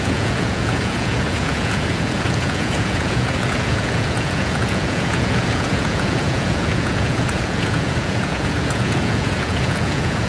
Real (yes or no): no